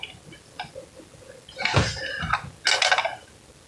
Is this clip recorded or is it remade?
recorded